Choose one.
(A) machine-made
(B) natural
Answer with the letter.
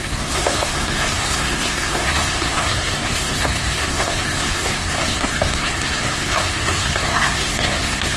A